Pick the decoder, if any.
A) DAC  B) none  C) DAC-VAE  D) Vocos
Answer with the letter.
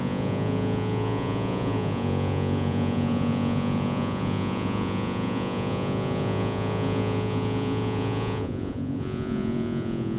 D